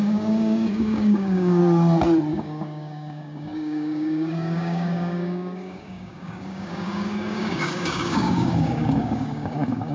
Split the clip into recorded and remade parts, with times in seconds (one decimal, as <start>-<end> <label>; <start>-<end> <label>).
0.0-1.6 remade; 1.6-2.3 recorded; 2.3-9.9 remade